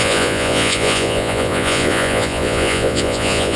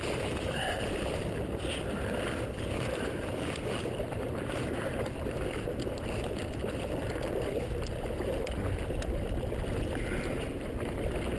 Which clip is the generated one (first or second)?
first